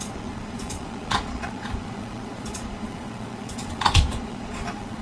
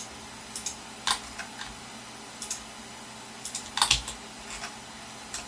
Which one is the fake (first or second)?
first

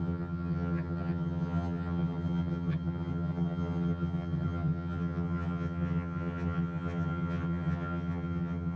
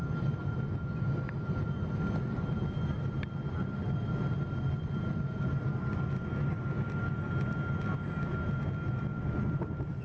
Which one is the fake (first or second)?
first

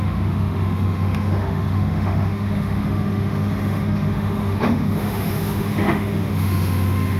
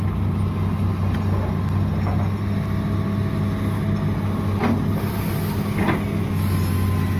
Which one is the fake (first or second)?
first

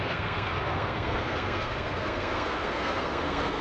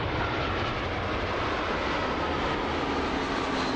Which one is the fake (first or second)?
first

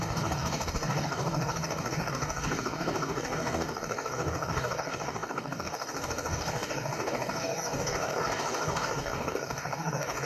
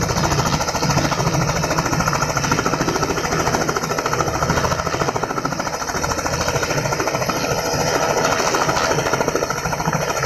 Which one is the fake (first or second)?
first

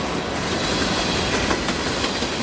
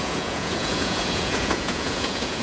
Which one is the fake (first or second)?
second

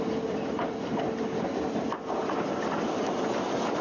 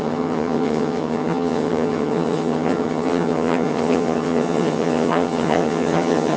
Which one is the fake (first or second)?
second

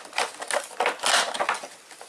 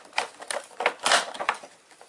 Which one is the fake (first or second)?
second